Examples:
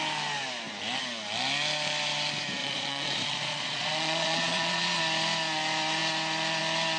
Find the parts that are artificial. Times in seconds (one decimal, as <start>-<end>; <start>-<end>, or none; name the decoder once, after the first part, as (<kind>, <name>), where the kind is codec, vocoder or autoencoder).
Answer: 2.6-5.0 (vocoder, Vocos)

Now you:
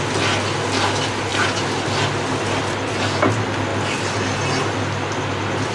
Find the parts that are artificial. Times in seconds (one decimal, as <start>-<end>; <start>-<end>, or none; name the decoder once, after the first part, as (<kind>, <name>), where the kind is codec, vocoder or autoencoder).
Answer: none

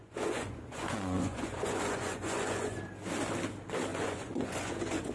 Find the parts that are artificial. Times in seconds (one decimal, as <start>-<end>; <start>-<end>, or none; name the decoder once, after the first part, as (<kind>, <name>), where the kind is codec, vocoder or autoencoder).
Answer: 0.0-2.8 (vocoder, Vocos); 3.9-5.1

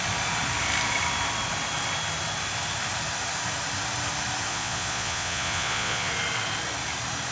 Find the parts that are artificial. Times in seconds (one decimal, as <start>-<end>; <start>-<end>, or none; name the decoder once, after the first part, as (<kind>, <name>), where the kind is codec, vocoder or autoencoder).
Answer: 4.5-6.1 (vocoder, Vocos)

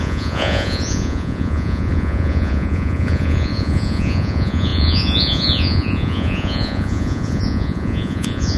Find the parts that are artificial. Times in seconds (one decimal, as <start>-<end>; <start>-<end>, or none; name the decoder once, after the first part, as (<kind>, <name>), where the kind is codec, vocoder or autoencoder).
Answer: 0.0-8.6 (vocoder, Vocos)

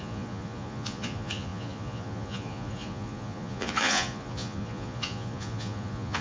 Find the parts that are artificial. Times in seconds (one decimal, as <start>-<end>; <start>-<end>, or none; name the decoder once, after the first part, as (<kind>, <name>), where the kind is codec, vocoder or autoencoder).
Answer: 0.0-6.2 (vocoder, Vocos)